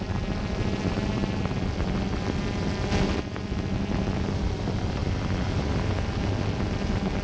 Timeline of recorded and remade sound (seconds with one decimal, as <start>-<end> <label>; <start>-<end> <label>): 0.0-7.2 recorded